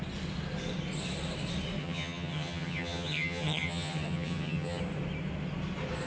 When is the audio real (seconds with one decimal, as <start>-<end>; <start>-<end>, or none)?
0.0-1.8; 4.8-6.1